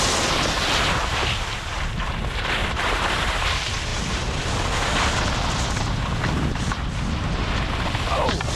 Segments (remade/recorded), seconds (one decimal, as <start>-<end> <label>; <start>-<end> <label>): 0.0-2.6 recorded; 2.6-3.5 remade; 3.5-8.6 recorded